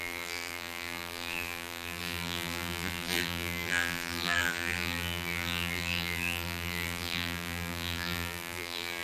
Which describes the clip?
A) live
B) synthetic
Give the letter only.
B